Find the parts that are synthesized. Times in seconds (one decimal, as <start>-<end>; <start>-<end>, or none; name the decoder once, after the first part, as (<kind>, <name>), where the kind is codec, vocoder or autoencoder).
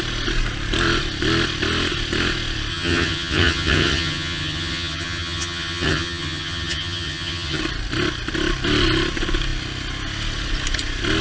2.7-7.6 (vocoder, HiFi-GAN)